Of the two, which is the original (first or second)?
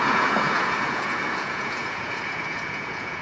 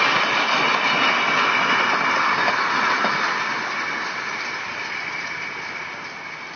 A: second